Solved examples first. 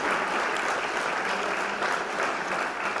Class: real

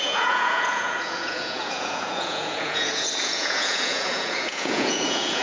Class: fake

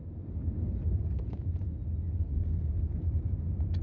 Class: real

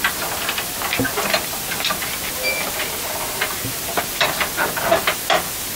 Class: real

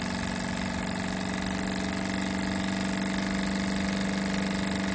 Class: real